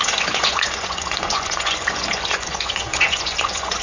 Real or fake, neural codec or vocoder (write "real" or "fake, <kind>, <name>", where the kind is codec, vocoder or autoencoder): fake, vocoder, Vocos